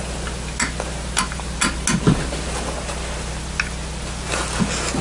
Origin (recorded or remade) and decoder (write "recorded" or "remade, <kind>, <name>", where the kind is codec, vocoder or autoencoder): recorded